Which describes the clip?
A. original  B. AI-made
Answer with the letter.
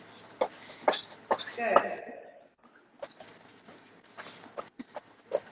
A